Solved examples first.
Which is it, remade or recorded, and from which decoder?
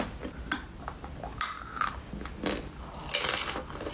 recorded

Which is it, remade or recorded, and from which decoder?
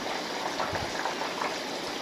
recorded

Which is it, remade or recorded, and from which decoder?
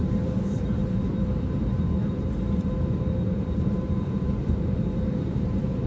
remade, vocoder, BigVGAN v2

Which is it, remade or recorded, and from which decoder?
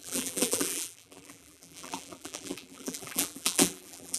remade, vocoder, BigVGAN v2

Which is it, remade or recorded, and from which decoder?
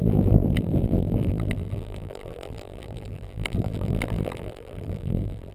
remade, vocoder, BigVGAN v2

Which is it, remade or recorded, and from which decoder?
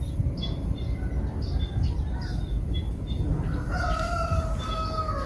recorded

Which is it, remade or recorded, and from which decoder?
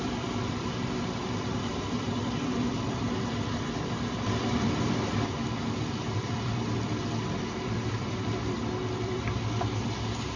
remade, vocoder, BigVGAN v2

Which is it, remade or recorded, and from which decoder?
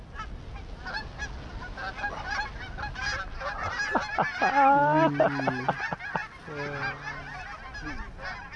recorded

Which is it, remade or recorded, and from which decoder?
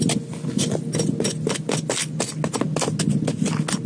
recorded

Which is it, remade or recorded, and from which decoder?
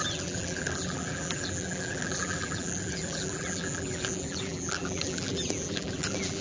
remade, vocoder, BigVGAN v2